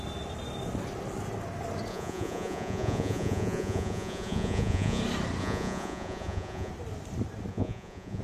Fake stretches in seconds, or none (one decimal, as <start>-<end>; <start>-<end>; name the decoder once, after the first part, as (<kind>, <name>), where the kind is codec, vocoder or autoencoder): 1.9-5.0 (vocoder, Vocos); 5.4-6.7; 7.5-8.2